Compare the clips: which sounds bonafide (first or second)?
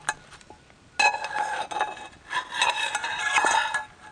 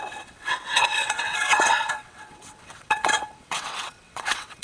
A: first